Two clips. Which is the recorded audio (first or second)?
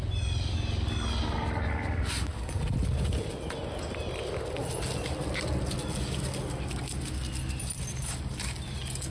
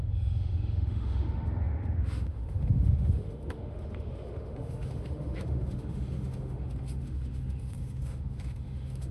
first